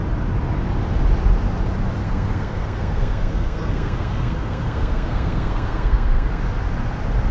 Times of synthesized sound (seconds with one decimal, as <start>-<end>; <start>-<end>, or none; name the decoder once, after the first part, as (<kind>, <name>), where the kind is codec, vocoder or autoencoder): 2.0-6.4 (codec, SNAC)